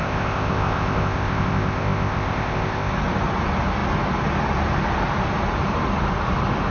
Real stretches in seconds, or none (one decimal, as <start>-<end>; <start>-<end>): 2.9-6.7